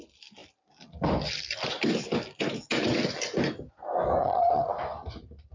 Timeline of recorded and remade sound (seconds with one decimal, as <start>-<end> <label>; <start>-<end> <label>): 0.0-4.2 recorded; 4.2-4.7 remade; 4.7-5.5 recorded

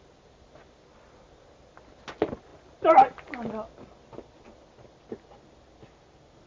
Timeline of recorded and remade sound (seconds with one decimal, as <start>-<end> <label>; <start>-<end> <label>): 0.0-6.5 recorded